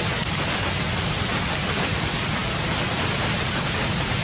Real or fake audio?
real